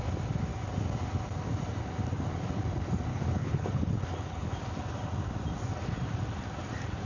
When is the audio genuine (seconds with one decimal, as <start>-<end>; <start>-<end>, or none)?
0.0-3.1; 4.5-7.1